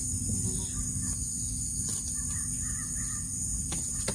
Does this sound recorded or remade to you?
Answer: recorded